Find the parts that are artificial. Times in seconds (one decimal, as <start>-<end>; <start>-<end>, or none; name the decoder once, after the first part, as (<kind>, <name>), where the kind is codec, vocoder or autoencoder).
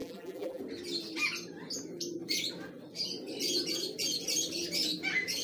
0.0-0.6 (vocoder, BigVGAN v2)